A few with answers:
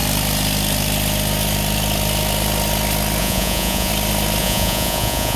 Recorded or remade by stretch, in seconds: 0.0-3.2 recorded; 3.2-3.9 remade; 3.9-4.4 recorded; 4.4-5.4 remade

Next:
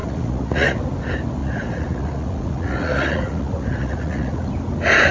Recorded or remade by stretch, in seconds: 0.0-0.8 remade; 0.8-1.4 recorded; 1.4-4.5 remade; 4.5-5.1 recorded

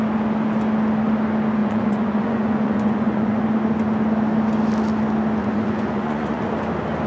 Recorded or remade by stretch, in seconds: 0.0-1.6 recorded; 1.6-3.4 remade; 3.4-5.4 recorded; 5.4-6.5 remade; 6.5-7.1 recorded

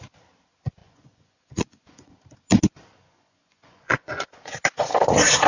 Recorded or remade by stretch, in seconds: 0.0-0.8 recorded; 0.8-2.1 remade; 2.1-3.0 recorded; 3.0-4.3 remade; 4.3-5.5 recorded

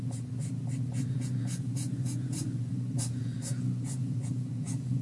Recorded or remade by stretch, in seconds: 0.0-0.4 remade; 0.4-0.9 recorded; 0.9-5.0 remade

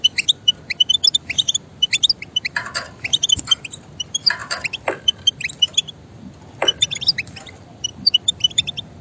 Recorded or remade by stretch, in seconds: 0.0-9.0 recorded